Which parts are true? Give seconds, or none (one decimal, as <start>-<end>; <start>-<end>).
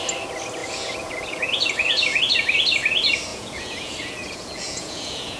0.0-0.6; 2.2-3.3